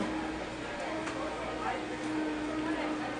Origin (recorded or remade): recorded